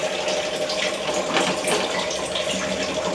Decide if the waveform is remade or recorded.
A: recorded